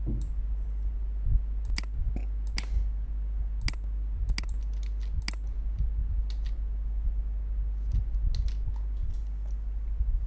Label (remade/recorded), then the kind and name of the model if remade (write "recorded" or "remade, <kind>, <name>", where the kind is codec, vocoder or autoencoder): recorded